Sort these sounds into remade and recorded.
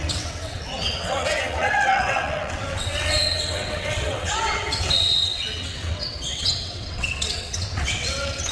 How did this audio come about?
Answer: remade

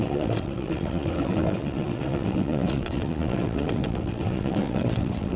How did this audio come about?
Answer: remade